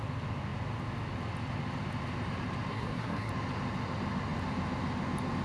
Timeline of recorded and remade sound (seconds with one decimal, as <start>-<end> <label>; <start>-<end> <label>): 0.0-2.7 recorded; 2.7-3.3 remade; 3.3-5.4 recorded